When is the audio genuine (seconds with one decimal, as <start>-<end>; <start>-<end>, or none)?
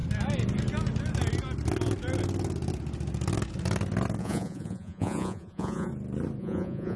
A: 0.0-4.2; 5.9-6.4